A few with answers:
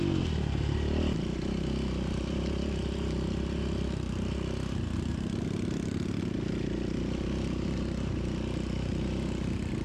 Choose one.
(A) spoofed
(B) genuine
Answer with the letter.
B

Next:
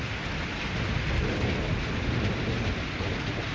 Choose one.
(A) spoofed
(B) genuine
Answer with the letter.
B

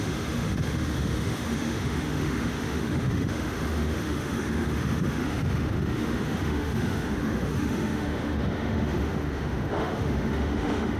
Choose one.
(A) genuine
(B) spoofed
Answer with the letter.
B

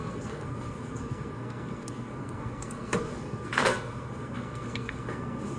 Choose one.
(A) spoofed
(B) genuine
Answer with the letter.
A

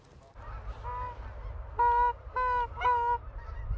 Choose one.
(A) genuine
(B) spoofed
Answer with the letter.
A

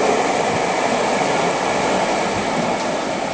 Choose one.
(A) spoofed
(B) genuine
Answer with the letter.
B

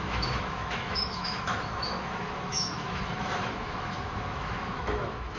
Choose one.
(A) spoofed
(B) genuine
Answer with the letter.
A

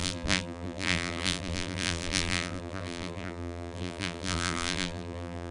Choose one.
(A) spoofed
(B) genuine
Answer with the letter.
A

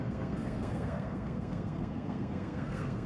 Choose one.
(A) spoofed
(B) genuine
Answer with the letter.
A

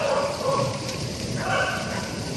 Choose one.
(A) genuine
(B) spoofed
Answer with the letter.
B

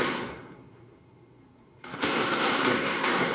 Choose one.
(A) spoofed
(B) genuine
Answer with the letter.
A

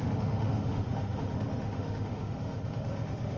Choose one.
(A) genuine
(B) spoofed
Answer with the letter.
B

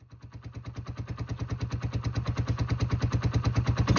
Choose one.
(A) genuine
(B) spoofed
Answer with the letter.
A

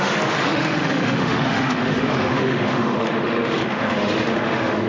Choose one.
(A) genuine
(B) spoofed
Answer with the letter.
B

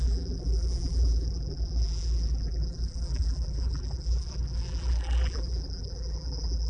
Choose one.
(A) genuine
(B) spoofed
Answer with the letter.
B